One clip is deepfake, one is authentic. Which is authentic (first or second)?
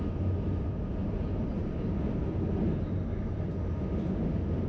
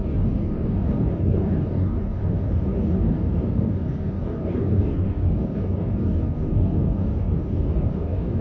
first